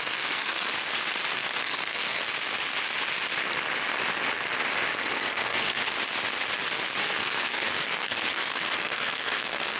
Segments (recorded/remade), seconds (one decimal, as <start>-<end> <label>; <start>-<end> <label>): 0.0-0.7 remade; 0.7-1.3 recorded; 1.3-2.3 remade; 2.3-5.0 recorded; 5.0-5.8 remade; 5.8-7.0 recorded; 7.0-9.8 remade